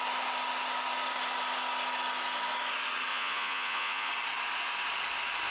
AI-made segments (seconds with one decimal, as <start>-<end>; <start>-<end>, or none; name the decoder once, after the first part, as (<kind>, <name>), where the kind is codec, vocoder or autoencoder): 3.1-4.1 (vocoder, Vocos)